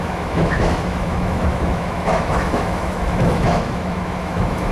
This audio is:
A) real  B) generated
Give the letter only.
B